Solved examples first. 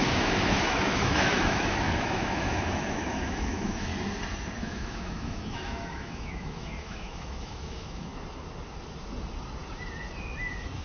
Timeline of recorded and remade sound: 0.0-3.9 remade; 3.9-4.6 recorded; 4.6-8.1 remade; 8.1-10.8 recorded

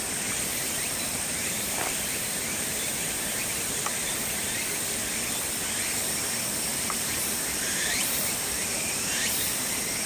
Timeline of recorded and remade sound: 0.0-0.5 recorded; 0.5-4.5 remade; 4.5-6.7 recorded; 6.7-9.7 remade; 9.7-10.1 recorded